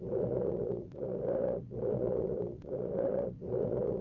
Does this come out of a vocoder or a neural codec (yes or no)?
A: yes